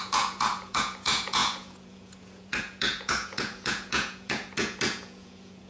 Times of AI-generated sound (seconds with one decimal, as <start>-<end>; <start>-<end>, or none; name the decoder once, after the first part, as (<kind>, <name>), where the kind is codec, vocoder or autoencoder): 0.0-5.7 (vocoder, Vocos)